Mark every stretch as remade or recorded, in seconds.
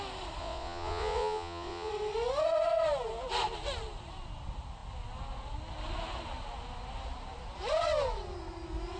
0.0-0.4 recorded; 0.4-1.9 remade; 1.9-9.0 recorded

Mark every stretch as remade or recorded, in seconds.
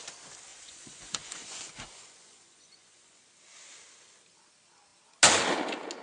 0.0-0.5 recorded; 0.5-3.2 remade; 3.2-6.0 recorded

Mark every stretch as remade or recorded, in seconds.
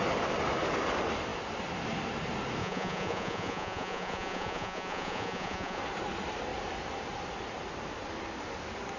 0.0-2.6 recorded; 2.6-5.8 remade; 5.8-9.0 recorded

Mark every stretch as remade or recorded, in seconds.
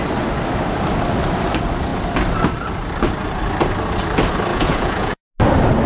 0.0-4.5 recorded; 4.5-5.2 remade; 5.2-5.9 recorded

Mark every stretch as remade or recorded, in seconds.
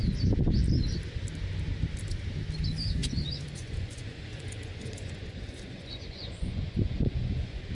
0.0-3.0 recorded; 3.0-7.7 remade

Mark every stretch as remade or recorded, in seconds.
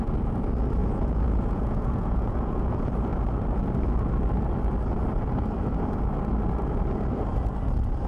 0.0-0.8 recorded; 0.8-2.7 remade; 2.7-8.1 recorded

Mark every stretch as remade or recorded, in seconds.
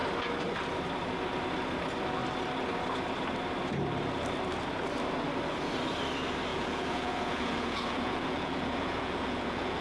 0.0-6.5 recorded; 6.5-9.8 remade